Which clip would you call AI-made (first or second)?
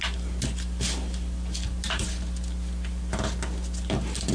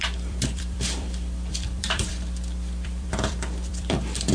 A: second